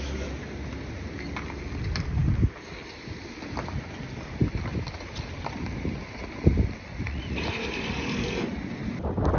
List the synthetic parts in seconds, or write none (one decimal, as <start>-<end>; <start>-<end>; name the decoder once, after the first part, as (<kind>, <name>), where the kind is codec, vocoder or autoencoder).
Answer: 6.9-7.5 (vocoder, Vocos)